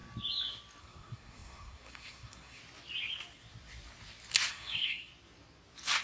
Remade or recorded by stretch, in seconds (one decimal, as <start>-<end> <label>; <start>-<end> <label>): 0.0-0.8 recorded; 0.8-2.6 remade; 2.6-4.5 recorded; 4.5-5.1 remade; 5.1-6.0 recorded

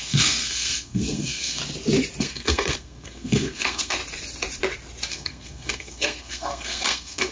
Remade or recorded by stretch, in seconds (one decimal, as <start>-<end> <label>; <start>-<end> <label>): 0.0-1.6 remade; 1.6-2.2 recorded; 2.2-4.0 remade; 4.0-5.1 recorded; 5.1-7.3 remade